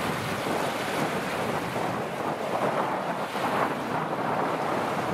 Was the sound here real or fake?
real